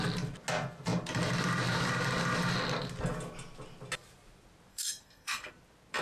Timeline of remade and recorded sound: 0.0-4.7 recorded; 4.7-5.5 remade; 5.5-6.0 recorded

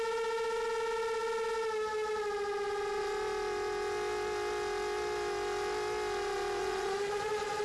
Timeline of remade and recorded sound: 0.0-6.6 recorded; 6.6-7.6 remade

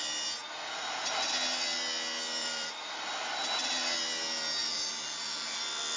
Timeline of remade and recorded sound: 0.0-2.4 recorded; 2.4-3.0 remade; 3.0-4.6 recorded; 4.6-5.6 remade; 5.6-6.0 recorded